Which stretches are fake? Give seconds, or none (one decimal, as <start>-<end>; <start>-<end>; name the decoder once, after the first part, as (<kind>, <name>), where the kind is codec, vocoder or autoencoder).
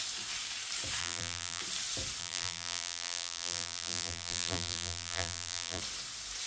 1.0-1.6 (vocoder, BigVGAN v2); 2.2-5.8